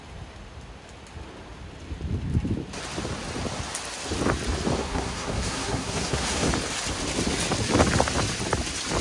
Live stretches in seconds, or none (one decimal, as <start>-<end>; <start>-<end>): 0.0-4.8; 6.5-9.0

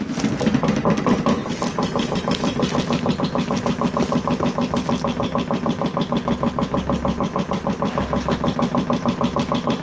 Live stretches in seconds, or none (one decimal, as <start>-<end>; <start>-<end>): 0.0-9.8